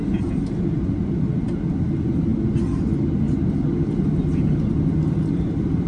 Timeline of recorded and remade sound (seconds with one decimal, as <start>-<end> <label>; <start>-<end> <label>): 0.0-5.9 recorded